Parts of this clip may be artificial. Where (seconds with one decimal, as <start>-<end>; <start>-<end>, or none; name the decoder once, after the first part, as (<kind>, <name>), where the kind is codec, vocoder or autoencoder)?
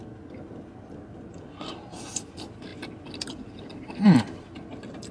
none